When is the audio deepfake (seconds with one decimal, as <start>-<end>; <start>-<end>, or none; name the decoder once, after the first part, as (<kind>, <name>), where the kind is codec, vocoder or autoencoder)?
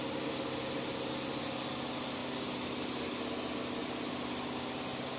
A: none